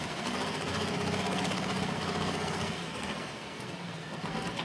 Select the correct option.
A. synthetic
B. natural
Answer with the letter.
A